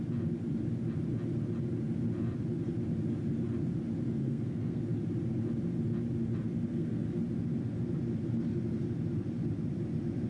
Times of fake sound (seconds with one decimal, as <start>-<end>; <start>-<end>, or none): 4.2-4.8; 6.7-7.2